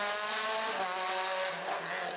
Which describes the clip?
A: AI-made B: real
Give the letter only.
B